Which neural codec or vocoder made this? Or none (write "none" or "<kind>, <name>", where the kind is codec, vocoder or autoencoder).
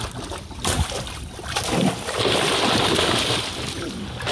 none